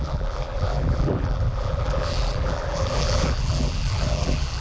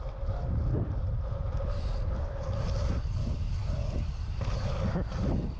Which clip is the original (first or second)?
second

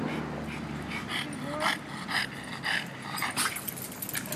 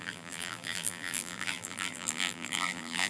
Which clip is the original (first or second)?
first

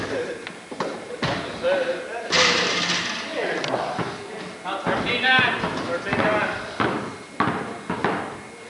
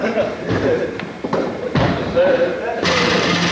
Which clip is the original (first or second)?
first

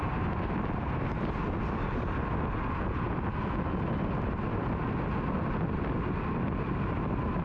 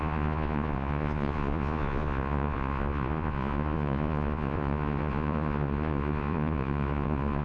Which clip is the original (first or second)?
first